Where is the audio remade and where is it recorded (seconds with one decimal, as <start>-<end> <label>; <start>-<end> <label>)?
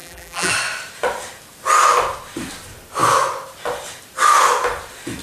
0.0-0.5 remade; 0.5-5.2 recorded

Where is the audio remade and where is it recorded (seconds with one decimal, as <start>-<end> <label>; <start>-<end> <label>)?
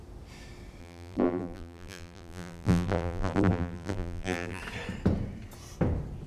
0.0-0.8 recorded; 0.8-4.6 remade; 4.6-6.3 recorded